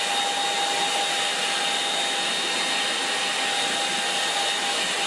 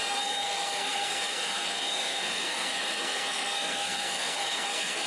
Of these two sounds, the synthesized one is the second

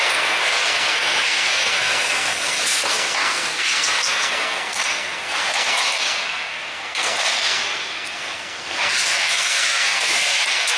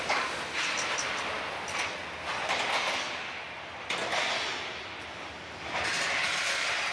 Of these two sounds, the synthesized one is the first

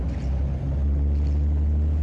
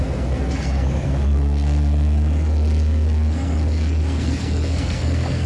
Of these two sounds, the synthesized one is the second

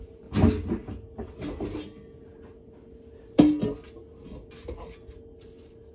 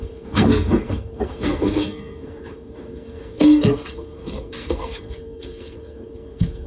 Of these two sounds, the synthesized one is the second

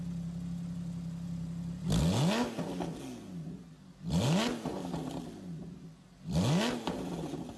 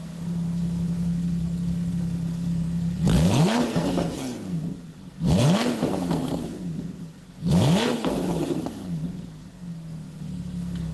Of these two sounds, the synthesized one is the second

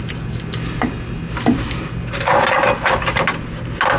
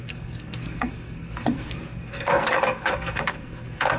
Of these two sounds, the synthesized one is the second